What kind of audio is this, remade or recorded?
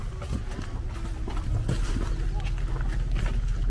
recorded